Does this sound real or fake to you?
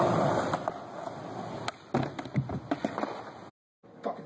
real